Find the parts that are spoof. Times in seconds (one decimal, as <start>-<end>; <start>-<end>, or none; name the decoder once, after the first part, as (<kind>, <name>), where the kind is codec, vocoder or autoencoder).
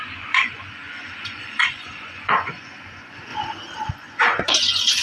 0.0-3.3 (vocoder, Vocos); 3.9-5.0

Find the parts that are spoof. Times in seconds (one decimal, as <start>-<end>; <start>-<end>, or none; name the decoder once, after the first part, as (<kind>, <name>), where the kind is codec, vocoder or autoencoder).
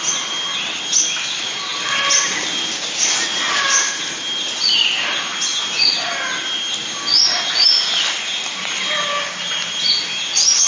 none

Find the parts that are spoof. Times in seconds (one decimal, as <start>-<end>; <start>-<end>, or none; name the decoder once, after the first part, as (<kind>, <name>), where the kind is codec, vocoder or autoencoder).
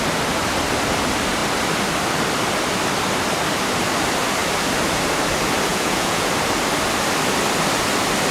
5.7-6.3 (vocoder, Vocos)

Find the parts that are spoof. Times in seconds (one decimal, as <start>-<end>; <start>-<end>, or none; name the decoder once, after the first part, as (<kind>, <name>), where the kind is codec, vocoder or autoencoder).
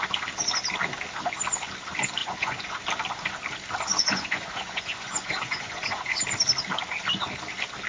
2.2-2.8 (vocoder, Vocos); 3.9-6.2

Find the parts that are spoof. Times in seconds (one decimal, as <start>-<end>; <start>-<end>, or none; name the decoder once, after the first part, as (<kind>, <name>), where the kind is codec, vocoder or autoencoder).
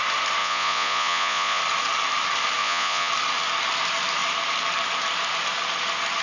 0.4-1.6 (vocoder, Vocos); 2.6-3.1